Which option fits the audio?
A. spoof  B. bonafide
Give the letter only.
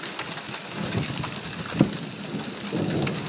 B